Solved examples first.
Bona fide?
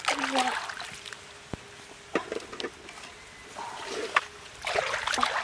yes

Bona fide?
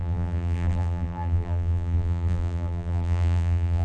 no